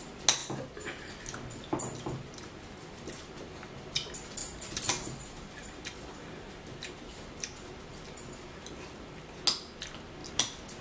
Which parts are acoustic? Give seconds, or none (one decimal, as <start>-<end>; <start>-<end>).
0.0-10.8